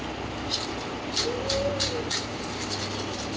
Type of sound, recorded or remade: recorded